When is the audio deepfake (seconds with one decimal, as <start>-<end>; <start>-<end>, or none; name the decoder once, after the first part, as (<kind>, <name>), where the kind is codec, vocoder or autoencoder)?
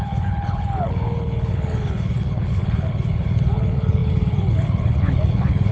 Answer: 0.0-5.7 (codec, HILCodec)